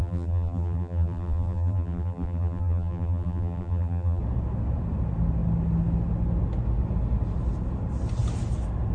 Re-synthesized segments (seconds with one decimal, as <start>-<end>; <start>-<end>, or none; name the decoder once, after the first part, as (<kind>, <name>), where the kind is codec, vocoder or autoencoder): 0.0-4.2 (vocoder, BigVGAN v2)